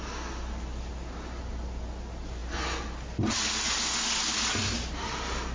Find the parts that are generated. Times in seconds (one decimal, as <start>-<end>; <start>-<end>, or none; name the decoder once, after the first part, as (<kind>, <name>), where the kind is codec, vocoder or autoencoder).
none